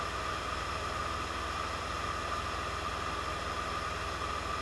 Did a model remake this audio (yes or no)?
no